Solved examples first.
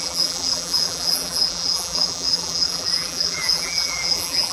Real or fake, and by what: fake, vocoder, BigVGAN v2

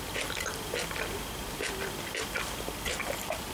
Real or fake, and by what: real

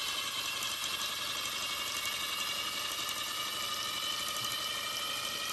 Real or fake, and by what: real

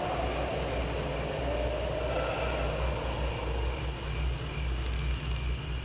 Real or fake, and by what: real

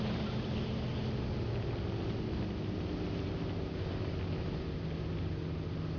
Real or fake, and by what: real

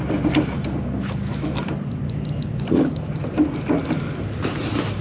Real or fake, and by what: real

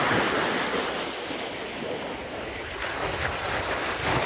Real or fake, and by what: real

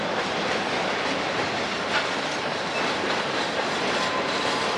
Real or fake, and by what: real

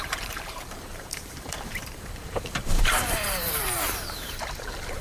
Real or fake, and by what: fake, vocoder, BigVGAN v2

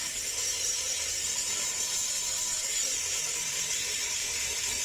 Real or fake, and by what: fake, vocoder, BigVGAN v2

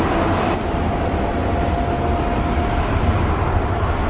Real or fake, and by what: real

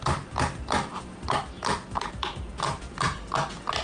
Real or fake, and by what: real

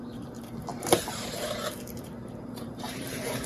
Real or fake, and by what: fake, vocoder, BigVGAN v2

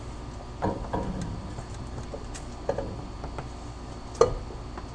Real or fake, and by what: real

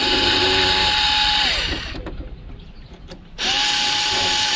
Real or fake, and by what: fake, vocoder, BigVGAN v2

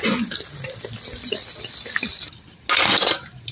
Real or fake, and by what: real